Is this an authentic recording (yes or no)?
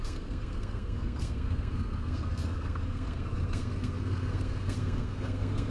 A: no